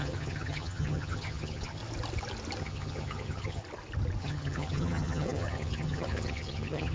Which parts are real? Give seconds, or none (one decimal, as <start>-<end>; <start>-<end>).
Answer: 1.8-2.6; 3.6-4.2